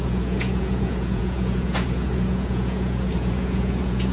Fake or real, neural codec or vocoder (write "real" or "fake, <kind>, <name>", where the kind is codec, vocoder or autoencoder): fake, vocoder, Vocos